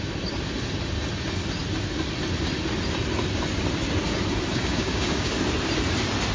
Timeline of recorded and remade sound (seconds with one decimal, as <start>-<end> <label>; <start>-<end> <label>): 0.0-4.5 recorded; 4.5-5.3 remade; 5.3-6.3 recorded